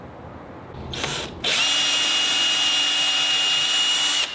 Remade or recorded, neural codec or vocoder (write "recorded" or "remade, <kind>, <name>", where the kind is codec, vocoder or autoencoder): recorded